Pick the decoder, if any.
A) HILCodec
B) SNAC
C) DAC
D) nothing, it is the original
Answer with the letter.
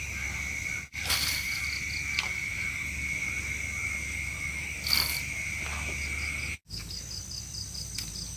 D